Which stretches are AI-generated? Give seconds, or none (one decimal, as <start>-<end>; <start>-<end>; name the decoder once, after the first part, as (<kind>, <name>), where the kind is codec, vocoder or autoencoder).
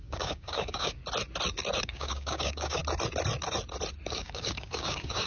0.0-1.0 (codec, DAC); 1.8-2.8; 4.1-5.3